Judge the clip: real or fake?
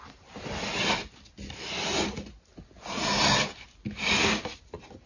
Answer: real